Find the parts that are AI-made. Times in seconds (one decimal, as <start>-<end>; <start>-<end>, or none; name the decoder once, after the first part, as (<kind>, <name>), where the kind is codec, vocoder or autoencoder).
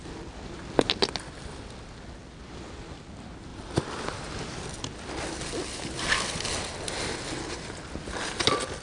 none